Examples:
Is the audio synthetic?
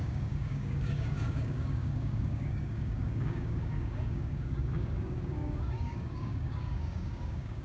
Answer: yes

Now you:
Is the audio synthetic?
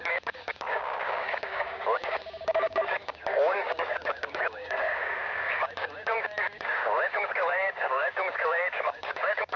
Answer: yes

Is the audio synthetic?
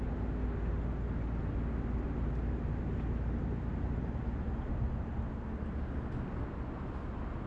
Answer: no